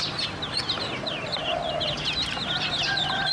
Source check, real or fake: real